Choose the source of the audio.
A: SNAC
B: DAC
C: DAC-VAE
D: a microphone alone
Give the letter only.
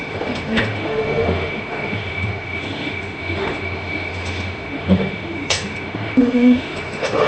C